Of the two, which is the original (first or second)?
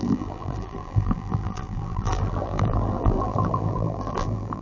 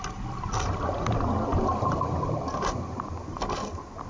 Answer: second